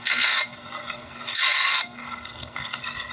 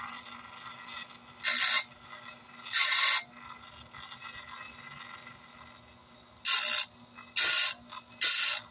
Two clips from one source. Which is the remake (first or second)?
first